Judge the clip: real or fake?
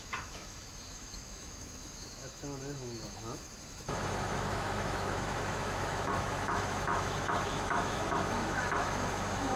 fake